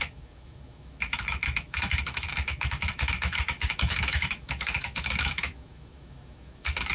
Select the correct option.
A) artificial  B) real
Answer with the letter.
A